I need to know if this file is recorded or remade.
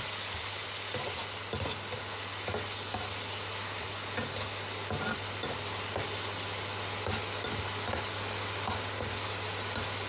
recorded